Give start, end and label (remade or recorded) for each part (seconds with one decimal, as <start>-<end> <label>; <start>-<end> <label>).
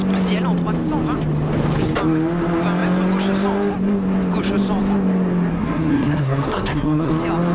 0.0-5.5 recorded; 5.5-7.1 remade; 7.1-7.5 recorded